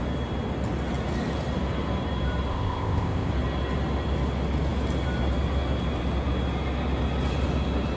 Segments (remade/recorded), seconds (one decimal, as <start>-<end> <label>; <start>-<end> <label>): 0.0-2.5 recorded; 2.5-3.3 remade; 3.3-8.0 recorded